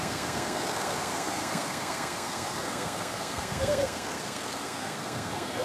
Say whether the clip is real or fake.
fake